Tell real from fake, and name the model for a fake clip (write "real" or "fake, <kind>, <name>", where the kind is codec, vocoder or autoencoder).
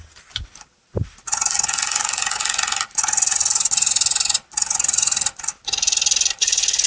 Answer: real